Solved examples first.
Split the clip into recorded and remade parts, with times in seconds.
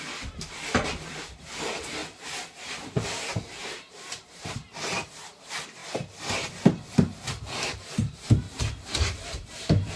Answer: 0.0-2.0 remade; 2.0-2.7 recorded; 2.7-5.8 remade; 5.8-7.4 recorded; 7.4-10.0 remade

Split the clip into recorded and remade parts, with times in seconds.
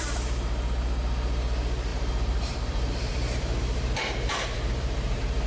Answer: 0.0-1.9 recorded; 1.9-5.5 remade